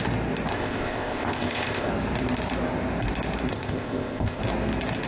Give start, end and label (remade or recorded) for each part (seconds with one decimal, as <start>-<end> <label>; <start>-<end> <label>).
0.0-0.5 recorded; 0.5-1.9 remade; 1.9-3.5 recorded; 3.5-4.4 remade; 4.4-5.1 recorded